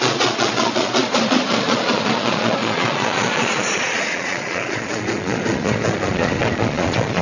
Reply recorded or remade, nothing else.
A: remade